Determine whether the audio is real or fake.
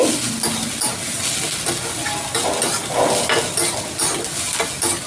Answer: real